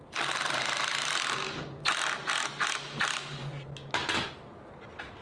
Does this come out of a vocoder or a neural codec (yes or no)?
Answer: no